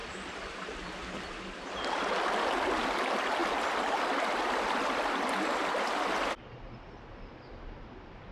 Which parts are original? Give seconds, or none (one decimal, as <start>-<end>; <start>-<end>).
0.0-8.3